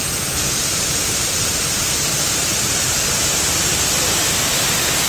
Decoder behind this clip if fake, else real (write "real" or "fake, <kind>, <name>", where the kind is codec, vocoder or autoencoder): real